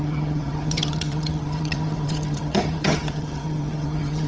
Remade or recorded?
remade